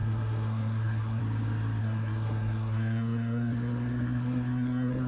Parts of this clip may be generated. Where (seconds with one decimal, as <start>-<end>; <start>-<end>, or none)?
0.0-1.2; 1.8-5.1

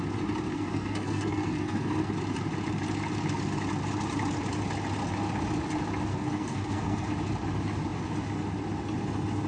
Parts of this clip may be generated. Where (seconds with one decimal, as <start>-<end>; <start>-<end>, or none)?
0.5-2.1; 6.1-7.1

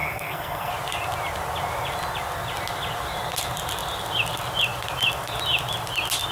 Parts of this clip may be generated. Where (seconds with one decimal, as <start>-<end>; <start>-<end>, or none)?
0.0-0.7

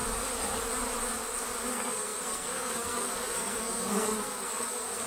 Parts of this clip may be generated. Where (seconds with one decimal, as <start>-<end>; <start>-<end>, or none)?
1.7-5.1

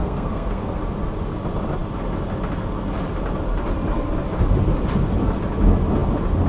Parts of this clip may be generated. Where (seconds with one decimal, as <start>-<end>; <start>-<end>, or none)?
0.0-0.8

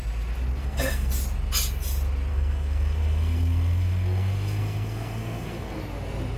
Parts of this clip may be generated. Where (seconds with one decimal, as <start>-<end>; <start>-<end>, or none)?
0.6-1.1; 2.3-5.8

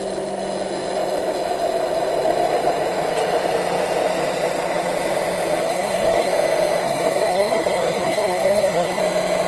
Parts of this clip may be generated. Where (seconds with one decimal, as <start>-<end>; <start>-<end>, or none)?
5.6-6.3; 6.8-9.0

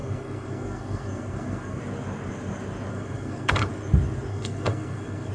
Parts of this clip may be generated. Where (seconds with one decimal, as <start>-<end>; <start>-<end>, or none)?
0.0-1.8; 2.9-3.7; 4.3-5.3